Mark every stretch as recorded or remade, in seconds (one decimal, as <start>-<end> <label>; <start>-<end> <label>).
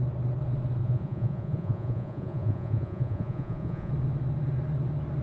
0.0-0.8 recorded; 0.8-3.9 remade; 3.9-5.2 recorded